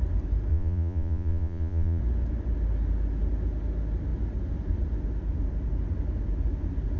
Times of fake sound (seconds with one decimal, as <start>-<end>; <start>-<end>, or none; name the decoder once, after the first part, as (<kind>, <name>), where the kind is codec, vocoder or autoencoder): 0.5-2.0 (vocoder, Vocos)